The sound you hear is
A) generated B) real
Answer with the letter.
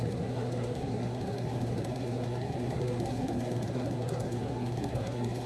A